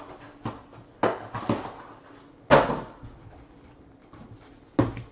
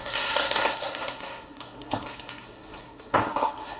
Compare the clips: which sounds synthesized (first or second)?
second